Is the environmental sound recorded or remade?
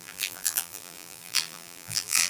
remade